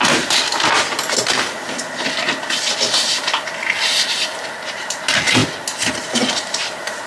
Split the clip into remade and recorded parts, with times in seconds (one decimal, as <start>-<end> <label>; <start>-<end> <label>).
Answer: 0.0-0.5 remade; 0.5-4.7 recorded; 4.7-5.4 remade; 5.4-6.0 recorded; 6.0-7.1 remade